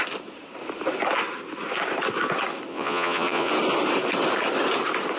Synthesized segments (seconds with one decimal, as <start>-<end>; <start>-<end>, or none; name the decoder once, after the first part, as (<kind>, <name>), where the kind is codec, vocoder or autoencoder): 2.7-3.5 (vocoder, Vocos)

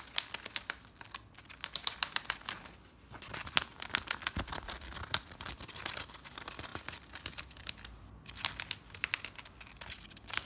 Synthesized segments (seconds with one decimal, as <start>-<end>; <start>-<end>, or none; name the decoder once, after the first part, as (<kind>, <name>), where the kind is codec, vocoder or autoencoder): none

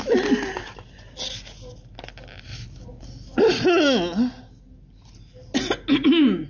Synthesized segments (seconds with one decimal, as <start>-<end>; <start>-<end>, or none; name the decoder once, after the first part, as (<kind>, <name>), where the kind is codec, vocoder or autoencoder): none

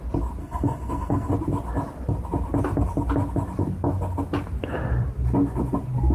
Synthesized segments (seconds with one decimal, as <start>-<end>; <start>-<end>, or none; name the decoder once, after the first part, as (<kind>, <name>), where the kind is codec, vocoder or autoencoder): 0.4-1.3 (codec, SNAC)